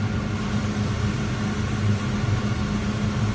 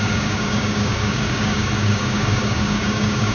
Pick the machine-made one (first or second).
second